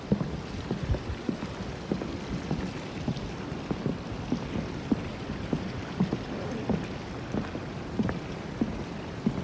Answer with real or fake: real